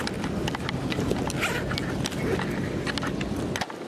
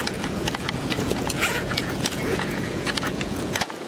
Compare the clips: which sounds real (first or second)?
first